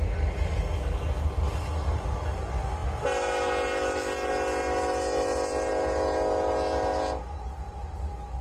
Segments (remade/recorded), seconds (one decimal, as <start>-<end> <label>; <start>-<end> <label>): 0.0-8.4 recorded